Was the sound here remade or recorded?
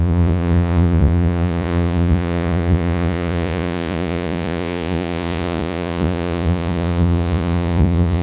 remade